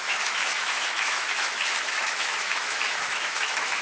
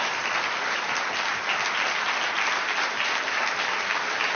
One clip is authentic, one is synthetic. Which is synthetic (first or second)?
first